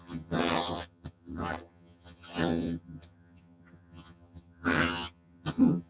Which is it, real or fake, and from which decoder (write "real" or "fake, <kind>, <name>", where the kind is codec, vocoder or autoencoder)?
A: fake, vocoder, HiFi-GAN